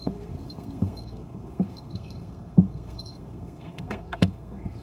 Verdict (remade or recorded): remade